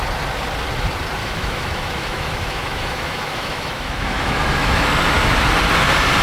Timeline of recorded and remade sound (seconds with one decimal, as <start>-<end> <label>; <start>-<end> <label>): 0.0-1.2 recorded; 1.2-4.9 remade; 4.9-6.2 recorded